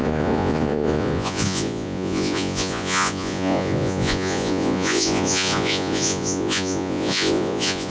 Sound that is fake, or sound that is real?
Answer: fake